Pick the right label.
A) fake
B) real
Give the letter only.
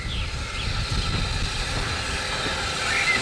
B